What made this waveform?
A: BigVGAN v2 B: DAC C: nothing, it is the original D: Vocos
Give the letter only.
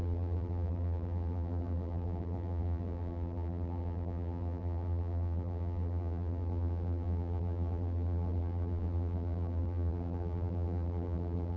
A